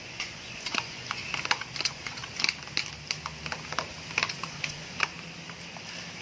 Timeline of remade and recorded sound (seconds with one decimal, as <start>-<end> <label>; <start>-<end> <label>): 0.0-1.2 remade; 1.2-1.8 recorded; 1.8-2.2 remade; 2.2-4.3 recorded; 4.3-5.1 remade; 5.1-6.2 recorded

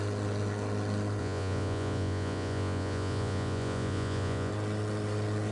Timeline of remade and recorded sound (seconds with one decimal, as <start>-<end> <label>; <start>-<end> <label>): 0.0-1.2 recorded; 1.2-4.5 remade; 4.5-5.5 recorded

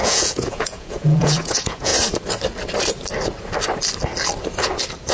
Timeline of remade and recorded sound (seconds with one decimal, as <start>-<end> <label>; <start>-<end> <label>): 0.0-1.9 remade; 1.9-5.1 recorded

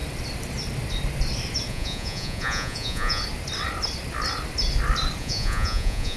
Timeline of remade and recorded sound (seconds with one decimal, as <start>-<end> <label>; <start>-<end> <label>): 0.0-1.7 recorded; 1.7-3.2 remade; 3.2-5.2 recorded; 5.2-6.2 remade

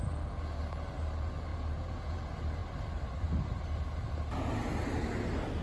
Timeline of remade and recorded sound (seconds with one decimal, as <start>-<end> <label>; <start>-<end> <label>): 0.0-1.5 recorded; 1.5-2.2 remade; 2.2-5.6 recorded

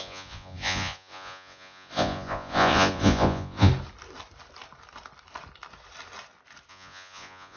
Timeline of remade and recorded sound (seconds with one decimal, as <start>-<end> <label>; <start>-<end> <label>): 0.0-3.7 remade; 3.7-6.7 recorded; 6.7-7.6 remade

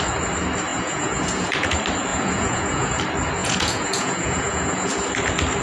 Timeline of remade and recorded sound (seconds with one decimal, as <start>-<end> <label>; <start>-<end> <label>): 0.0-0.7 recorded; 0.7-1.7 remade; 1.7-2.1 recorded; 2.1-3.0 remade; 3.0-3.4 recorded; 3.4-4.9 remade; 4.9-5.6 recorded

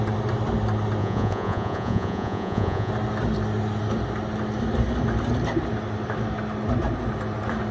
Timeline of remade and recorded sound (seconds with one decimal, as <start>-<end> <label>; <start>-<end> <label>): 0.0-1.0 recorded; 1.0-2.9 remade; 2.9-7.7 recorded